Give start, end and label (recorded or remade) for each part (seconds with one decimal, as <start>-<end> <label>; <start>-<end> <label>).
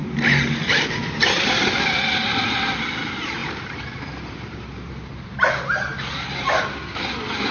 0.0-3.4 recorded; 3.4-5.5 remade; 5.5-5.9 recorded; 5.9-6.6 remade; 6.6-7.5 recorded